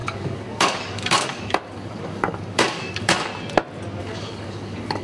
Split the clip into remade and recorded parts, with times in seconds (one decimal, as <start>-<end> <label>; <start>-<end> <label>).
0.0-3.3 remade; 3.3-4.0 recorded; 4.0-5.0 remade